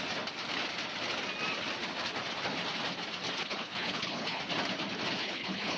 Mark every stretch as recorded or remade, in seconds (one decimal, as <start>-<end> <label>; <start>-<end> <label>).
0.0-3.4 recorded; 3.4-4.4 remade; 4.4-5.2 recorded; 5.2-5.8 remade